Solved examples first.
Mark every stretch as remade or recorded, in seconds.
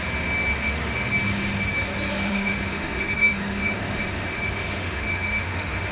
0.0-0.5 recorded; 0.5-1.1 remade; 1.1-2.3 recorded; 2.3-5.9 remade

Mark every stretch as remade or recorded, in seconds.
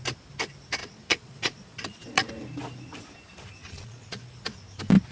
0.0-0.8 recorded; 0.8-2.3 remade; 2.3-3.6 recorded; 3.6-4.2 remade; 4.2-5.1 recorded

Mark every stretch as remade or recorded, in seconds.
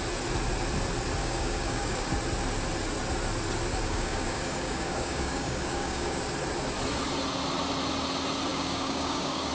0.0-1.2 recorded; 1.2-2.1 remade; 2.1-3.7 recorded; 3.7-6.2 remade; 6.2-8.5 recorded; 8.5-9.5 remade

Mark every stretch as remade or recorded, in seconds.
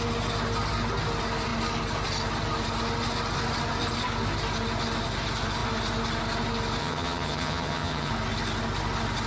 0.0-6.8 recorded; 6.8-8.1 remade; 8.1-9.3 recorded